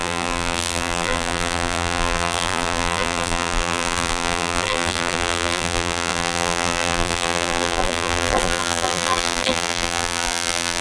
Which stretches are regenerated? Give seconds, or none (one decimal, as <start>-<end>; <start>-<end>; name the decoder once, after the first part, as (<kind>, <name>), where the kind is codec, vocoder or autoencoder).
0.0-10.8 (vocoder, BigVGAN v2)